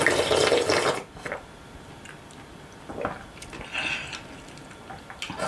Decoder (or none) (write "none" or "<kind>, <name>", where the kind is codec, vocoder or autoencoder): none